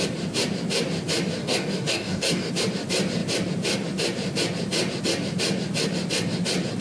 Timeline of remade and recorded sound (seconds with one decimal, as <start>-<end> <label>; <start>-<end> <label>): 0.0-1.4 recorded; 1.4-2.5 remade; 2.5-6.8 recorded